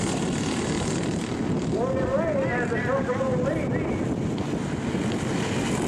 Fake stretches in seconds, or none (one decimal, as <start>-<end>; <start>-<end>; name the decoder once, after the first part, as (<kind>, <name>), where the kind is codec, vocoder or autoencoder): none

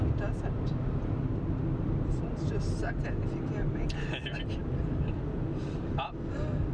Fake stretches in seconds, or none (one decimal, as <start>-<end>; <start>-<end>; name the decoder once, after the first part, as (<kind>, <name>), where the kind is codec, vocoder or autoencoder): none

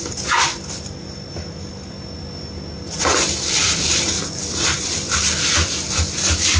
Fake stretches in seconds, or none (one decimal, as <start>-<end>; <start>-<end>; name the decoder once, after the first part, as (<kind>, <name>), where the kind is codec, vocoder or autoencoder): none

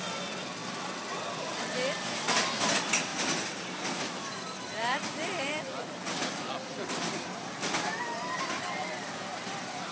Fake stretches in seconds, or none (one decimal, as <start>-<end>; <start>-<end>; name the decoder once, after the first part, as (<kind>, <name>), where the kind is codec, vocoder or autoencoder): 3.1-6.5 (vocoder, BigVGAN v2); 8.9-9.9

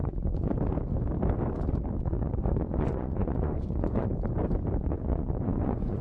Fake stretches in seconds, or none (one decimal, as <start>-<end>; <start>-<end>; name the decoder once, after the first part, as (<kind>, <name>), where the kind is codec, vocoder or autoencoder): 0.0-0.5 (vocoder, Vocos); 2.0-4.1; 4.8-6.0

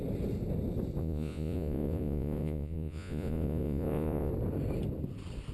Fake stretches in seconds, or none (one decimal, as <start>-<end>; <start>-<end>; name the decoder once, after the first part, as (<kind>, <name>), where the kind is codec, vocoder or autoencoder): 1.0-4.3 (vocoder, Vocos)

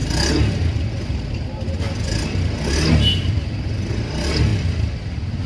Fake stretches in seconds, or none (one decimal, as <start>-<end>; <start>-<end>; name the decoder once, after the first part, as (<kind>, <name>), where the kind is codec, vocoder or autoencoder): none